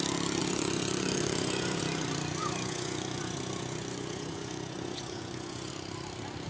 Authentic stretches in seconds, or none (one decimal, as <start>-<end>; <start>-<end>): 0.0-0.4; 1.8-2.4; 5.7-6.5